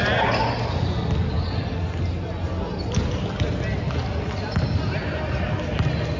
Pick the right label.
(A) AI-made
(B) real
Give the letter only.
B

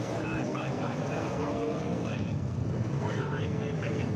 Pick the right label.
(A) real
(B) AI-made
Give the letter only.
B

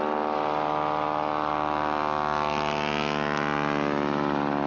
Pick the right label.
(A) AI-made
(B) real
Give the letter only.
B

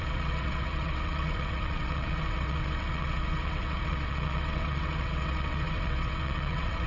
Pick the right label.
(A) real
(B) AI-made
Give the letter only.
B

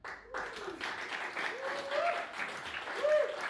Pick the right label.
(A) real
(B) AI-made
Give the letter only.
A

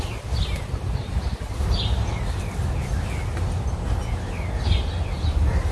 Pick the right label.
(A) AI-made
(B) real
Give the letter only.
B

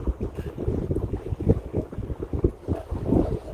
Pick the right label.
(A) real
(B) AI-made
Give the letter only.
A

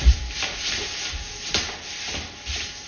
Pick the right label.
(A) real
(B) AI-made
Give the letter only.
B